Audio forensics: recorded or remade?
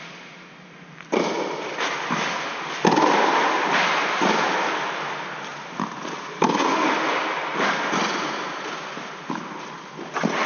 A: recorded